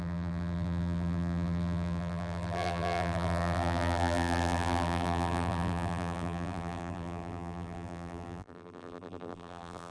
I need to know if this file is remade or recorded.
remade